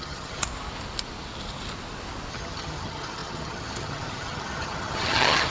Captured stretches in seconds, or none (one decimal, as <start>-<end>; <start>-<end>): 0.4-2.3